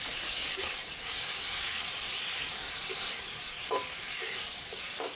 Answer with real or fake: fake